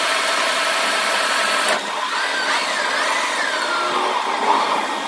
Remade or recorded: recorded